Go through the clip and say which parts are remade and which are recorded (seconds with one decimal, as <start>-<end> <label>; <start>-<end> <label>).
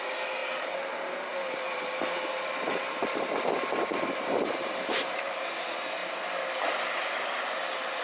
0.0-0.4 recorded; 0.4-5.2 remade; 5.2-8.0 recorded